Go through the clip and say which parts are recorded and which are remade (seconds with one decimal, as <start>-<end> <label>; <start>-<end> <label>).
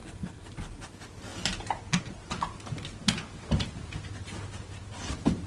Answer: 0.0-0.5 remade; 0.5-5.5 recorded